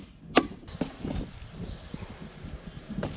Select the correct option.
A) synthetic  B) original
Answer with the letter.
B